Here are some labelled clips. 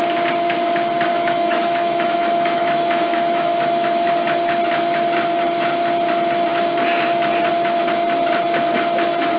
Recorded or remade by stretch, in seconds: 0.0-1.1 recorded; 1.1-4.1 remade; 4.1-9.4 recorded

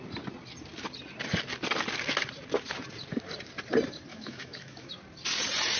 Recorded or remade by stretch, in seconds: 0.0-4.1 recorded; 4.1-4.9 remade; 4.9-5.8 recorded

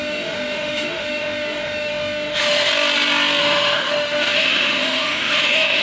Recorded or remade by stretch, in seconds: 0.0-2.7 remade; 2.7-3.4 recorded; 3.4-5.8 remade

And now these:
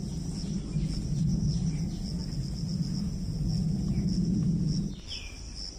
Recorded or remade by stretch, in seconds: 0.0-5.8 recorded

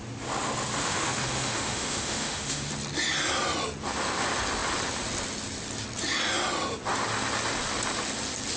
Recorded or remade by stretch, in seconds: 0.0-0.8 recorded; 0.8-2.7 remade; 2.7-8.6 recorded

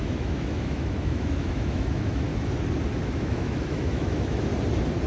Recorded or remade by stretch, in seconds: 0.0-2.3 remade; 2.3-3.0 recorded; 3.0-4.5 remade; 4.5-5.1 recorded